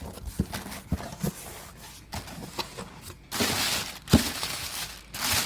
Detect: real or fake real